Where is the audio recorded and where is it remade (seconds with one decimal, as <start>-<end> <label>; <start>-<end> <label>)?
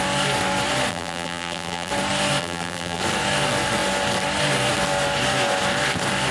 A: 0.0-0.9 recorded; 0.9-1.9 remade; 1.9-2.4 recorded; 2.4-3.0 remade; 3.0-6.3 recorded